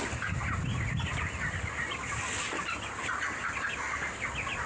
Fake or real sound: real